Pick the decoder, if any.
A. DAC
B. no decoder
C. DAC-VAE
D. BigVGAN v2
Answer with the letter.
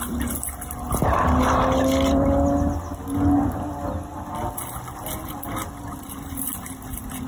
B